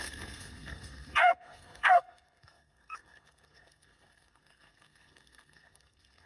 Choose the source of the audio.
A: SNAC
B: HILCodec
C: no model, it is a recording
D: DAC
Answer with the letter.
A